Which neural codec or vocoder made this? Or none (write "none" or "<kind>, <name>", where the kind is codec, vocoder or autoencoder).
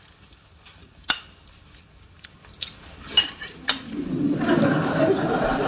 none